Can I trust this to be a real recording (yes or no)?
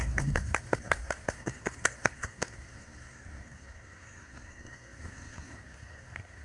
no